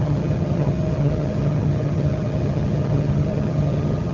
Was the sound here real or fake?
fake